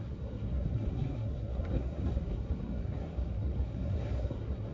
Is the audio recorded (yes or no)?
no